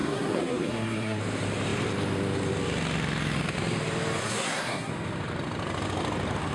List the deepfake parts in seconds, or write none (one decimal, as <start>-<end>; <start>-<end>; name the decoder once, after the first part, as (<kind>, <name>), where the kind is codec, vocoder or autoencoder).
0.0-1.2 (codec, SNAC); 4.2-4.9